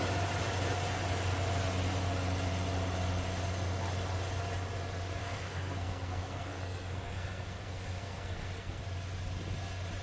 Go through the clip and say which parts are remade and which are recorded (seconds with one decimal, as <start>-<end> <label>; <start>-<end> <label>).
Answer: 0.0-5.2 recorded; 5.2-8.8 remade; 8.8-10.0 recorded